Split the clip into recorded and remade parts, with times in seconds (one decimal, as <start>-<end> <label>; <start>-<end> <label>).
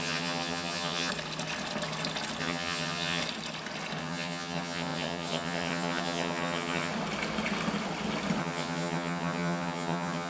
0.0-1.1 remade; 1.1-2.4 recorded; 2.4-3.2 remade; 3.2-4.0 recorded; 4.0-6.9 remade; 6.9-8.4 recorded; 8.4-10.3 remade